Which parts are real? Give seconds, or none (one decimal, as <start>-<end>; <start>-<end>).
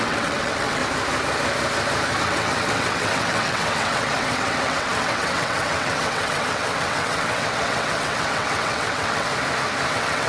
0.8-2.2; 9.3-9.9